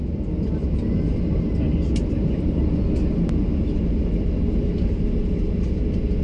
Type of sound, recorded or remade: recorded